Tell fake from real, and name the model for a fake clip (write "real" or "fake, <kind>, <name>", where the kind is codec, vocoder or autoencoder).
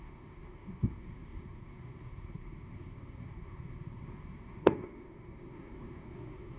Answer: fake, codec, SNAC